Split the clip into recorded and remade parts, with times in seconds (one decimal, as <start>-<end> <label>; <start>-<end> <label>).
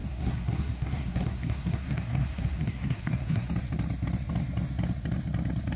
0.0-3.5 remade; 3.5-5.8 recorded